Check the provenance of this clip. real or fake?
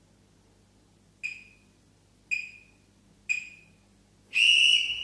real